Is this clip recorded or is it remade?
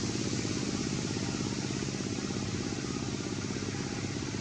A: recorded